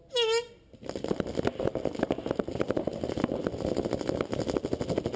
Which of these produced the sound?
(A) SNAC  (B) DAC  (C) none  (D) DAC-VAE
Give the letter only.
C